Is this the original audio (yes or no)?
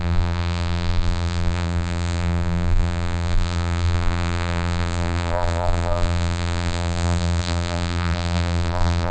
no